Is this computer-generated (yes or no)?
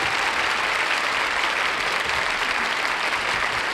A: no